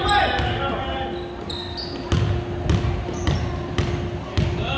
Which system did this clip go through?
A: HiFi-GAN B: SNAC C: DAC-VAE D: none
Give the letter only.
D